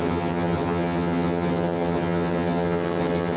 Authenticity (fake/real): fake